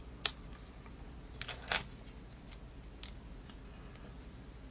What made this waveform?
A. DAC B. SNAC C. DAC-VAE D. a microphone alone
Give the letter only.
D